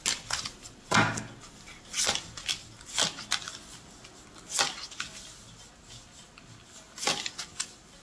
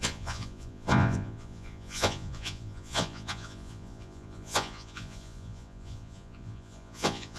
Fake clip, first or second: second